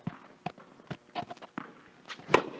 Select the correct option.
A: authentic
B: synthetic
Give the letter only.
A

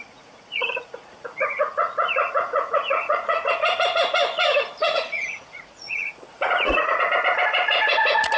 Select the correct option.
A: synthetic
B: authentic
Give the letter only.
A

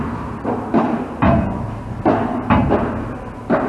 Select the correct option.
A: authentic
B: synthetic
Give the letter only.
A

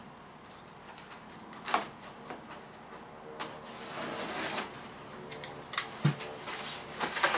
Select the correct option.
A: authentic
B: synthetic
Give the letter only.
A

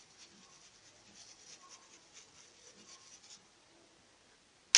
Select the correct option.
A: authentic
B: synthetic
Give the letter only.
A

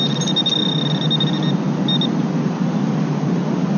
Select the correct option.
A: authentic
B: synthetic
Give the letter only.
A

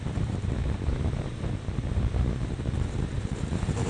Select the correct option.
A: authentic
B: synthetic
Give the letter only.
B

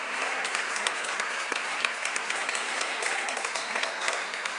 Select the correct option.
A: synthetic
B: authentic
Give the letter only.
A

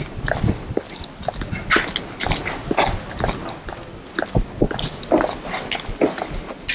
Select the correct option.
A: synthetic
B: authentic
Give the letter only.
B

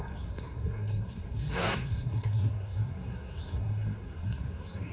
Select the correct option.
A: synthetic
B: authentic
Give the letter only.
A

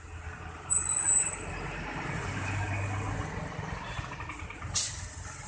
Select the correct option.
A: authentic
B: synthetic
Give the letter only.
A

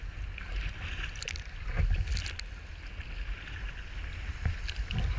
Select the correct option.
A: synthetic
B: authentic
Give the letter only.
B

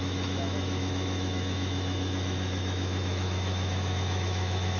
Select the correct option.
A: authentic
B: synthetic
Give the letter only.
B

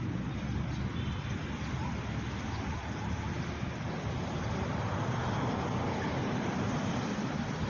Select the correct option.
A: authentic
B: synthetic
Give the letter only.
A